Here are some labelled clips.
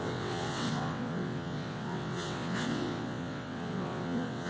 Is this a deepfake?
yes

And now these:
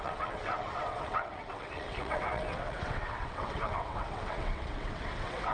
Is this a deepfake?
yes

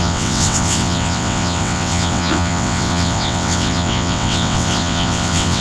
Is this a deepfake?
yes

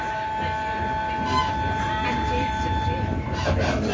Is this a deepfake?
no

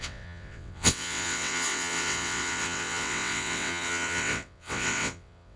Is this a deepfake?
yes